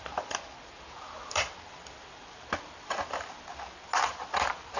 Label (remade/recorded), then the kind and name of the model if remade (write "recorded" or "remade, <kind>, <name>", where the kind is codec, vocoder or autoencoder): recorded